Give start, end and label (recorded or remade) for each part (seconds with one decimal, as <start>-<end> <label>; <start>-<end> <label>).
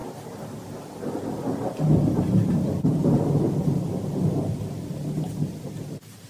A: 0.0-6.3 recorded